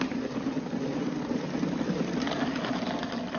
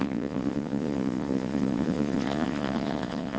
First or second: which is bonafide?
first